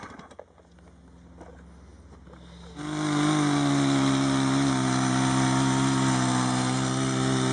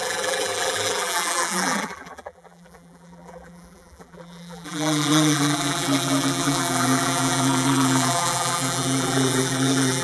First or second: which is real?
first